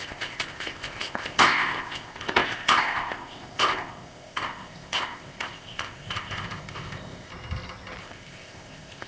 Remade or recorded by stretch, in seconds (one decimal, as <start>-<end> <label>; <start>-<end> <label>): 0.0-7.3 remade; 7.3-8.0 recorded; 8.0-9.1 remade